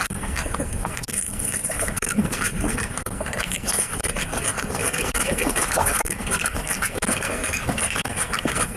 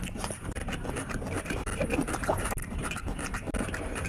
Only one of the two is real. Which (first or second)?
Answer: second